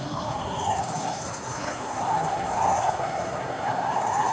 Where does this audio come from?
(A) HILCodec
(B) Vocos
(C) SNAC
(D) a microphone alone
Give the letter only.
C